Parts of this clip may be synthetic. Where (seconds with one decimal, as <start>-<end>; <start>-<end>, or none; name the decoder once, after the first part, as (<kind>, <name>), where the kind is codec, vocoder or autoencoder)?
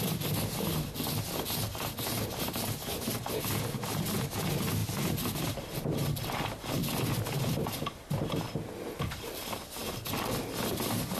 none